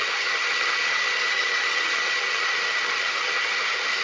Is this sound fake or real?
fake